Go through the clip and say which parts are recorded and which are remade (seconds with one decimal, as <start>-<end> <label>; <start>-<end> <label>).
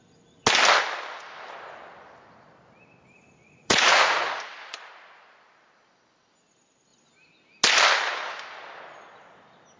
0.0-3.4 recorded; 3.4-4.4 remade; 4.4-9.8 recorded